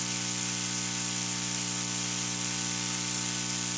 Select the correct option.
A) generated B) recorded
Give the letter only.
B